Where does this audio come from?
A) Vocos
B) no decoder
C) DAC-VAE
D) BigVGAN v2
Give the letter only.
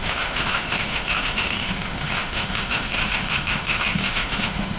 C